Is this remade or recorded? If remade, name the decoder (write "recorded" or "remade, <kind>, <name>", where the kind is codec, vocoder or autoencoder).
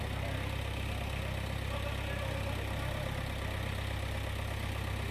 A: recorded